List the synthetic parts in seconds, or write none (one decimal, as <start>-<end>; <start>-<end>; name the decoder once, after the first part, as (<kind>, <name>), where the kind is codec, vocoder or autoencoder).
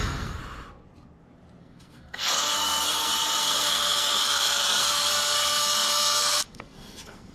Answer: 0.0-0.4 (codec, SNAC); 1.6-7.3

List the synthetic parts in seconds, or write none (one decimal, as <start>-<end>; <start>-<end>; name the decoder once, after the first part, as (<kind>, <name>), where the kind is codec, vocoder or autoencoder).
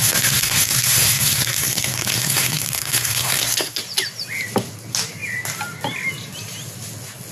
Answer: 0.0-3.8 (codec, SNAC)